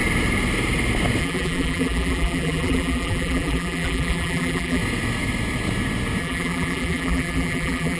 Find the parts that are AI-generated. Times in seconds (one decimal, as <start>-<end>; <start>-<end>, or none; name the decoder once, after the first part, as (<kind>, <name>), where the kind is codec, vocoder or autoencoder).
1.2-4.8 (vocoder, BigVGAN v2); 6.2-8.0